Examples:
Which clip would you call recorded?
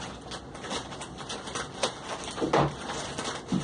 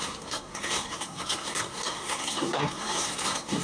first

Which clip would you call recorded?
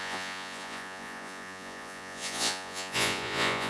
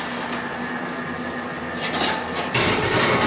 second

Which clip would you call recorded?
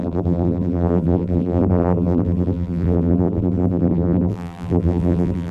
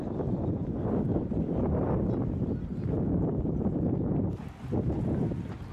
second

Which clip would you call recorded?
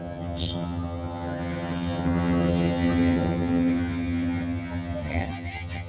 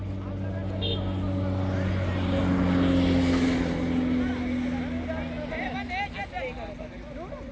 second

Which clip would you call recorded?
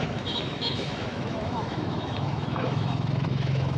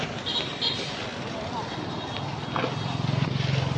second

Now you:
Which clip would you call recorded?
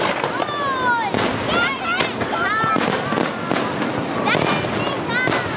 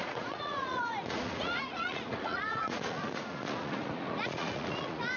first